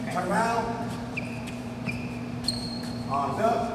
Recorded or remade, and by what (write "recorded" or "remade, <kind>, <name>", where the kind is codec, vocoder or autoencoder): remade, vocoder, BigVGAN v2